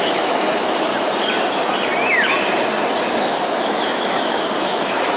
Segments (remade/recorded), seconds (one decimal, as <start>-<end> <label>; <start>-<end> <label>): 0.0-0.9 remade; 0.9-3.2 recorded; 3.2-5.2 remade